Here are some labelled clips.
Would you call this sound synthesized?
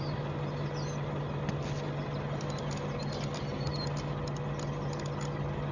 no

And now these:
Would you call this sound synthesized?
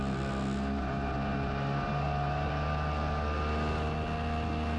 no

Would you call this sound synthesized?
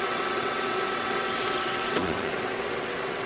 yes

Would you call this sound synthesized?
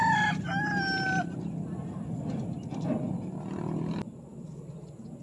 no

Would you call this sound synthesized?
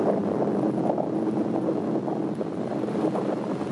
no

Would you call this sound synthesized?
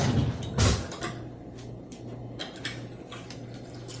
no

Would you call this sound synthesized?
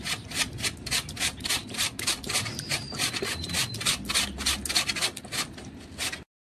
no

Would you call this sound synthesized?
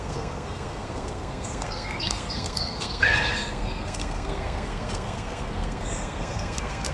yes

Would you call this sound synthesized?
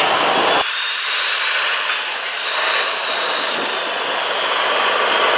no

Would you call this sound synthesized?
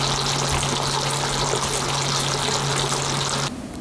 no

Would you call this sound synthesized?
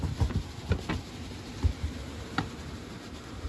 no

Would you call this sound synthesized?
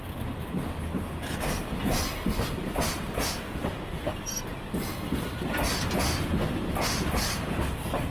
no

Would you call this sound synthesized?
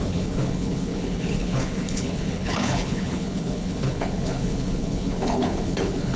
yes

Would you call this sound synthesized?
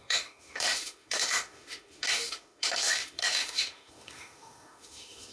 yes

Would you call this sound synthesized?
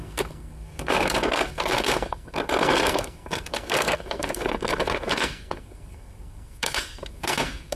yes